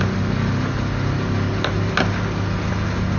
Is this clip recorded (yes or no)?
yes